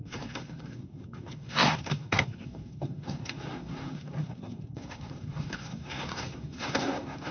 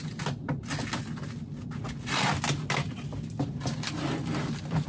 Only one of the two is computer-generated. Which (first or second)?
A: first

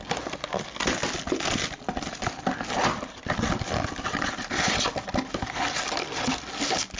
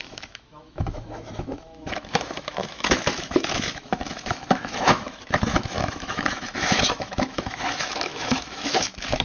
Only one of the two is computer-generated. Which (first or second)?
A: second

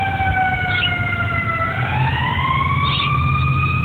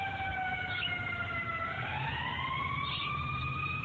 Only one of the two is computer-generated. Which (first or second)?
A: second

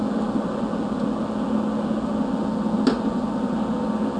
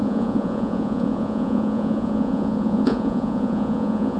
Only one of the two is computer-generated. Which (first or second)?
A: second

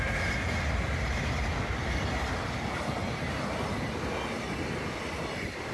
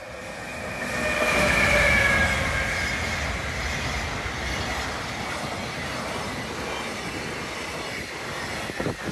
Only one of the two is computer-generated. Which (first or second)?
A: first